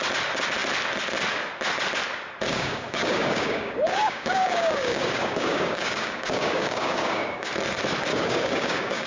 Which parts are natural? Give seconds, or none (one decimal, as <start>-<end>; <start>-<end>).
0.0-2.5; 7.5-8.1

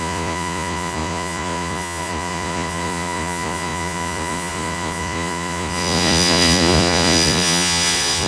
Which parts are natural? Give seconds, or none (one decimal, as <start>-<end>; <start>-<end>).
none

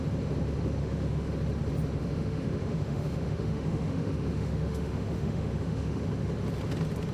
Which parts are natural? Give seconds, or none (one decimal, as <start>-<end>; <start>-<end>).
0.0-0.8; 1.3-2.0; 6.0-7.1

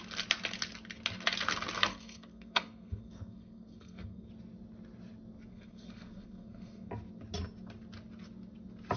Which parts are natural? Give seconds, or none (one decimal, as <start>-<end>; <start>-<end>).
0.0-1.9; 4.3-5.5; 6.9-9.0

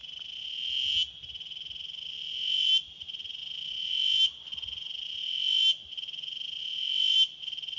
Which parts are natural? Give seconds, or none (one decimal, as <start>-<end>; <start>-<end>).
0.0-7.8

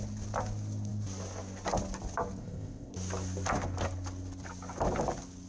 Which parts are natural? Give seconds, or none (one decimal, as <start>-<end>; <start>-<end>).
0.0-2.4; 2.9-5.5

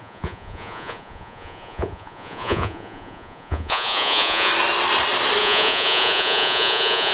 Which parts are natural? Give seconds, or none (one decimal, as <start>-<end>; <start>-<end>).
4.5-5.4